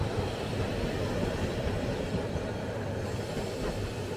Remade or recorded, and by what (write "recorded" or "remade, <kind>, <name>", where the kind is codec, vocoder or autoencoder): recorded